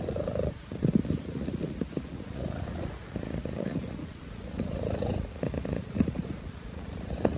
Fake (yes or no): yes